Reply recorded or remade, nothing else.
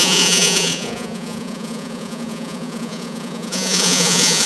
remade